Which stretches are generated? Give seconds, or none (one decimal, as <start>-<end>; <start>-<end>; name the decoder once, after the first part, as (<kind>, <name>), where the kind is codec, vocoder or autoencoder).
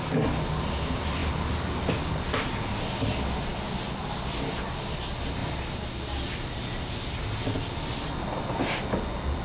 none